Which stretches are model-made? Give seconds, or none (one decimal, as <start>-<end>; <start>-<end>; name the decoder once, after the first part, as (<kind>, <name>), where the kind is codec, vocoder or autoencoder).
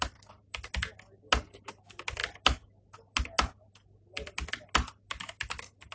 none